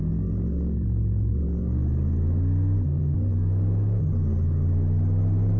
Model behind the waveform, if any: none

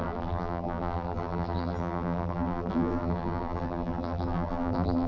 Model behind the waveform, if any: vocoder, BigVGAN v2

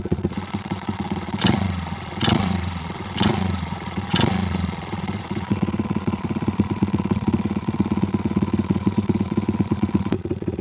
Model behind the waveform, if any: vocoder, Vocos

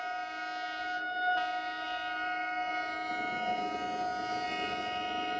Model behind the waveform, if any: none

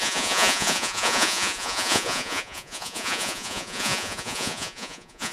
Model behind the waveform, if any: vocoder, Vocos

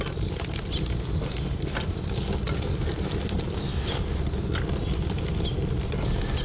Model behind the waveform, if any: none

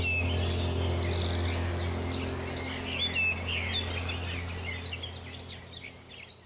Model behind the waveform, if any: none